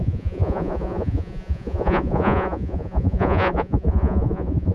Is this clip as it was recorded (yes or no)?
no